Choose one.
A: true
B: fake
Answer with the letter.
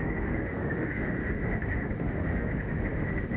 B